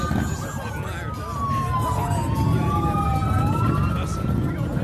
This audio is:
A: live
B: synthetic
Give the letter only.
A